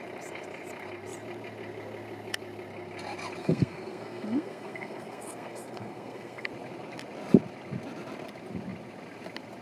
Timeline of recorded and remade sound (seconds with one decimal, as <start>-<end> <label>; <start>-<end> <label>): 0.0-3.4 recorded; 3.4-6.5 remade; 6.5-9.6 recorded